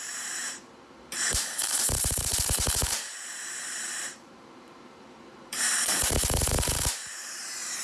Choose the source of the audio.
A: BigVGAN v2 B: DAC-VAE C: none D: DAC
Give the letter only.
A